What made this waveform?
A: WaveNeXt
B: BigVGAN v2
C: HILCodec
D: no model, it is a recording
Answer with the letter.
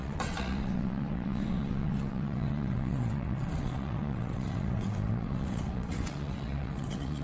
A